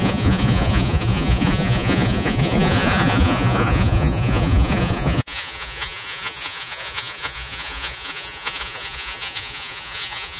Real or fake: fake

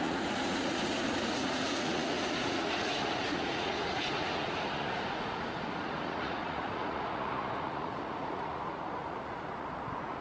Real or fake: fake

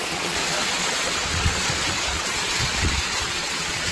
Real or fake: fake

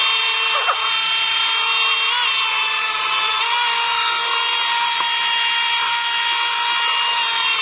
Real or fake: real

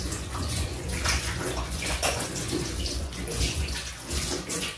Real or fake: fake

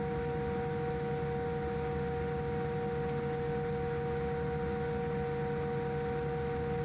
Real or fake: real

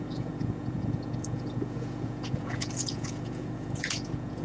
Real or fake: fake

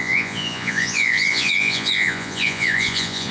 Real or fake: fake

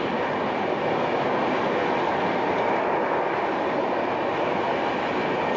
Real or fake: real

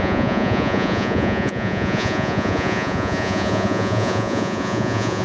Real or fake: fake